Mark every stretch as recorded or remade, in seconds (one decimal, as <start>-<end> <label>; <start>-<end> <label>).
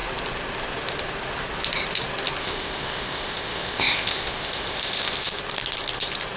0.0-2.4 recorded; 2.4-5.3 remade; 5.3-6.4 recorded